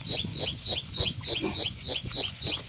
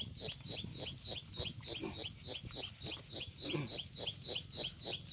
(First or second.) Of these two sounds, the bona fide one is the second